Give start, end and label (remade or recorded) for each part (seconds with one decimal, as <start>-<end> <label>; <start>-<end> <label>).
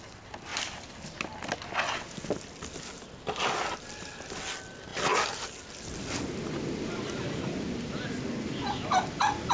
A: 0.0-9.5 recorded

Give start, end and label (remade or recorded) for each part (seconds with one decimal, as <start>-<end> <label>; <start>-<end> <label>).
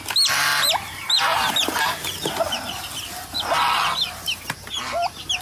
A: 0.0-5.4 recorded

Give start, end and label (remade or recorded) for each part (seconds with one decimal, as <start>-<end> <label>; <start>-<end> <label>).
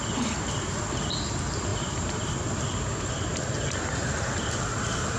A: 0.0-1.7 recorded; 1.7-2.3 remade; 2.3-5.2 recorded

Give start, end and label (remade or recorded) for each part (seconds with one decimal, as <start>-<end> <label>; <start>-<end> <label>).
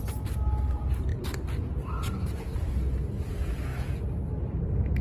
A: 0.0-5.0 recorded